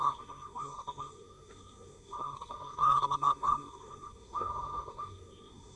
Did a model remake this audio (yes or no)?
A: yes